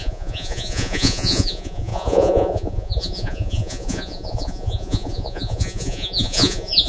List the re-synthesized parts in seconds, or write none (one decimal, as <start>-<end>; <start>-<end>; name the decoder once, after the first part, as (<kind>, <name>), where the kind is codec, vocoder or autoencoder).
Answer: 0.0-6.9 (vocoder, Vocos)